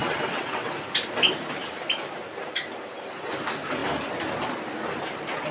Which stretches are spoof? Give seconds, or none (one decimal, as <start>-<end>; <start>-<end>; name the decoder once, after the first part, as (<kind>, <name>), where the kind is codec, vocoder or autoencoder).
0.0-0.7 (vocoder, WaveNeXt)